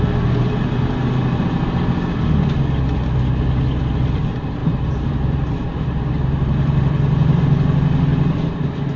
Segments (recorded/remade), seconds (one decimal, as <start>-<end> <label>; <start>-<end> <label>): 0.0-4.6 recorded; 4.6-7.4 remade; 7.4-9.0 recorded